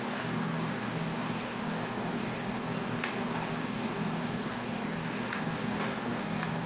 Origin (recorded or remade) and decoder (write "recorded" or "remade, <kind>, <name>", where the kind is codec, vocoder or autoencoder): remade, codec, DAC